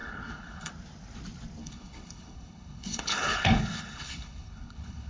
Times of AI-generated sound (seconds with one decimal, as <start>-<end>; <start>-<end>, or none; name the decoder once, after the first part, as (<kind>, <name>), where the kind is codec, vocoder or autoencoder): 0.0-0.7 (codec, HILCodec); 1.6-5.1